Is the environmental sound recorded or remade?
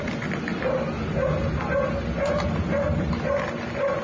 recorded